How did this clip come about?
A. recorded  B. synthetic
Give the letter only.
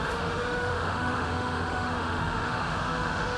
B